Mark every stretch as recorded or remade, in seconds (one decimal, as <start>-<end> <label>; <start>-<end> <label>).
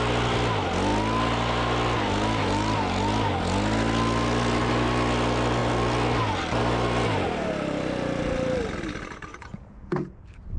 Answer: 0.0-9.3 recorded; 9.3-10.2 remade; 10.2-10.6 recorded